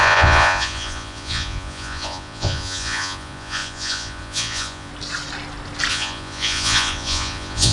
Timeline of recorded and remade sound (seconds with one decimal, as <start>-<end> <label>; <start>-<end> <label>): 0.0-4.9 remade; 4.9-5.9 recorded; 5.9-7.7 remade